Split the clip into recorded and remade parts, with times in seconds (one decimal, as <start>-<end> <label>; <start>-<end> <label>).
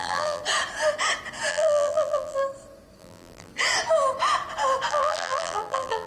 0.0-0.4 remade; 0.4-1.5 recorded; 1.5-2.4 remade; 2.4-3.0 recorded; 3.0-3.5 remade; 3.5-4.9 recorded; 4.9-6.1 remade